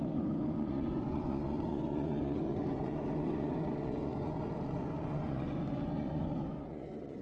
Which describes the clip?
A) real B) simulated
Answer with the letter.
B